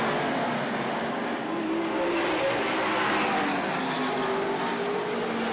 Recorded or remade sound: recorded